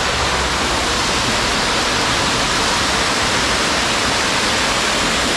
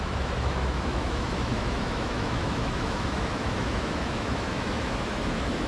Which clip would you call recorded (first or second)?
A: first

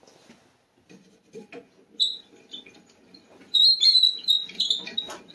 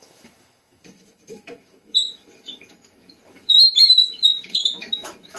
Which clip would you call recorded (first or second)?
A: first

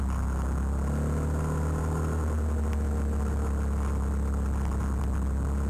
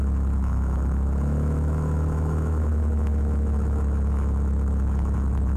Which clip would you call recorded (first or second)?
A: first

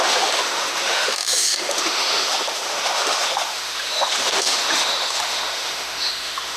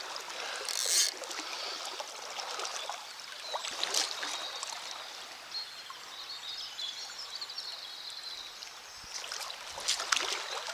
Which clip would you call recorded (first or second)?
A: second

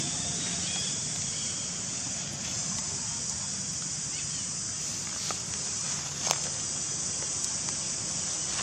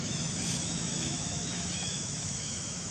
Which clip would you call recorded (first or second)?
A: first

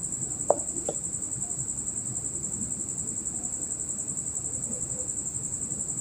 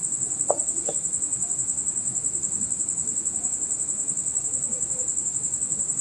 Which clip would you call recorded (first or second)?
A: first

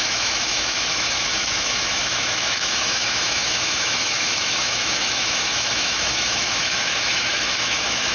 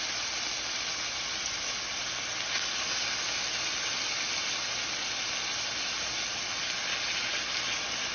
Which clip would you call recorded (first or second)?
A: second